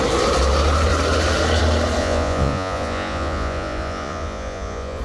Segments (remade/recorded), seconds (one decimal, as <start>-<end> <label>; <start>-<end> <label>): 0.0-2.0 recorded; 2.0-5.0 remade